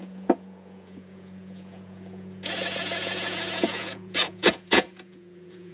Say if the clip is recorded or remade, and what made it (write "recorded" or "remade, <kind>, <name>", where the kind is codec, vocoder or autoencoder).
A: remade, vocoder, Vocos